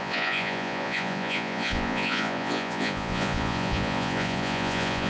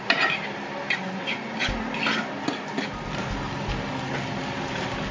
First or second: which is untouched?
second